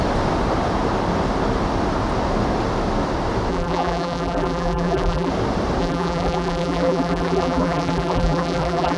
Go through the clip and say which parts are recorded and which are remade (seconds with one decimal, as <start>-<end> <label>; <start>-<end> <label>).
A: 0.0-3.5 recorded; 3.5-5.3 remade; 5.3-5.8 recorded; 5.8-9.0 remade